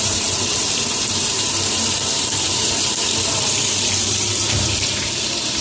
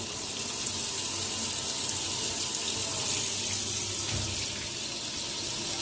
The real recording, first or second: second